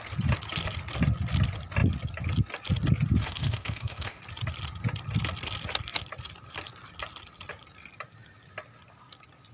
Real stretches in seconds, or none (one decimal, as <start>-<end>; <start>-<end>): 0.0-3.2; 4.2-9.5